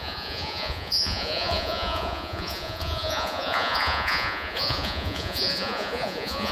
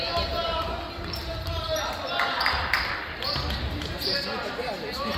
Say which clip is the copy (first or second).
first